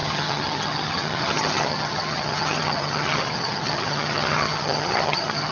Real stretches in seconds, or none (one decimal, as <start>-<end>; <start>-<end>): none